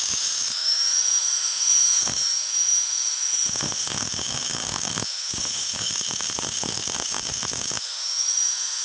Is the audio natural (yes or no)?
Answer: no